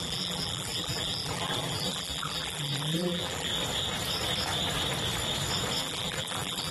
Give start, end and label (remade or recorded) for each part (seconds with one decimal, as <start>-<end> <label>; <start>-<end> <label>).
0.0-3.5 remade; 3.5-5.8 recorded; 5.8-6.7 remade